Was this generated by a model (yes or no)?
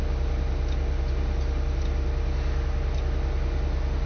no